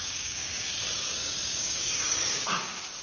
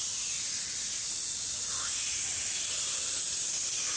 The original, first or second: second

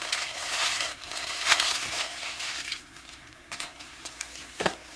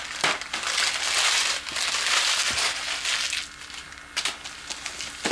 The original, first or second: second